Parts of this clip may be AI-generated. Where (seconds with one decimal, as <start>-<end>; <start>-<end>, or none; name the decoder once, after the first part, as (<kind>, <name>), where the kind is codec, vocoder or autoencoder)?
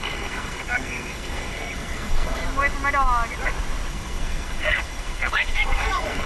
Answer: 0.0-2.4 (codec, SNAC); 3.9-6.3